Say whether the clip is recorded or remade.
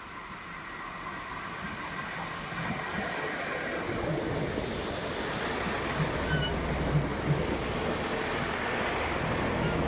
recorded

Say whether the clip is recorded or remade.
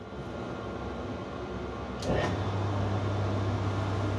recorded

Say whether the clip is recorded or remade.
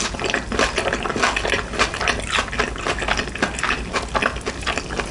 recorded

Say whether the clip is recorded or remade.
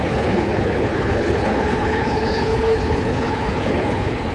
remade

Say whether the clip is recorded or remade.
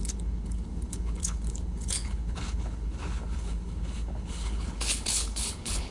remade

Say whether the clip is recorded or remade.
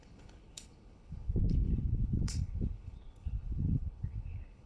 remade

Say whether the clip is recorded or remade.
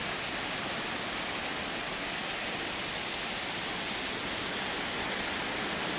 recorded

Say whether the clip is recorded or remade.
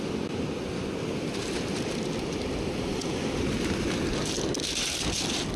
recorded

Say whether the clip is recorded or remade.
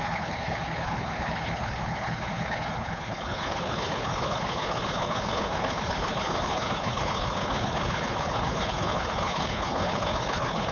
remade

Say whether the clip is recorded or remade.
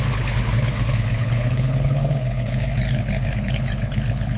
remade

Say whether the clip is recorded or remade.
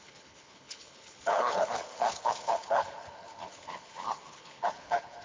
remade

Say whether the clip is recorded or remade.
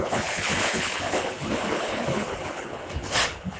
remade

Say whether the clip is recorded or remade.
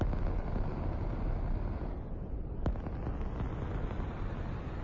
recorded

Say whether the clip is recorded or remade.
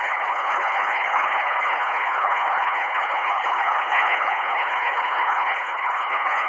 remade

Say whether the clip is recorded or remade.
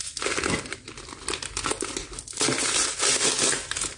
recorded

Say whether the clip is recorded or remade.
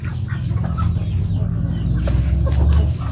recorded